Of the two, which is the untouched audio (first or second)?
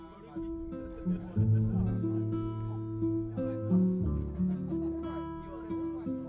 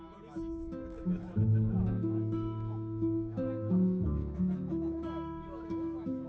first